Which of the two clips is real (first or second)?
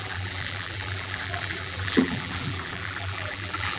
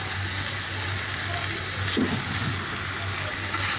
second